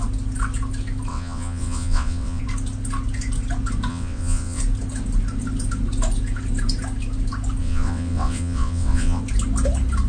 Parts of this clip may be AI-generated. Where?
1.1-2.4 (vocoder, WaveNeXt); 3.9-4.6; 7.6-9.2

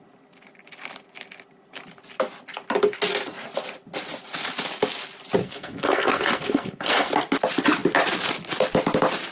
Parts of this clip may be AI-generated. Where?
5.4-7.1 (codec, SNAC)

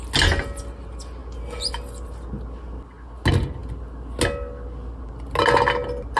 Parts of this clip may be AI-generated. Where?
none

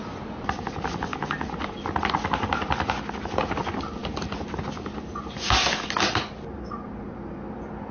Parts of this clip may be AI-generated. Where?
none

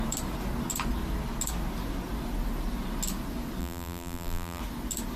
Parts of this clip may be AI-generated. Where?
3.6-4.6 (vocoder, BigVGAN v2)

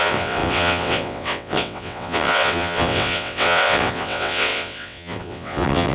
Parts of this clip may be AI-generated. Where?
0.0-5.9 (vocoder, WaveNeXt)